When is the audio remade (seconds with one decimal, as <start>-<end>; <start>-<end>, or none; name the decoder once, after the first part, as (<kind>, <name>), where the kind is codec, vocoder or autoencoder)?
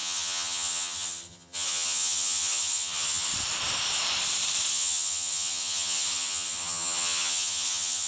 0.0-3.3 (vocoder, HiFi-GAN); 4.7-8.1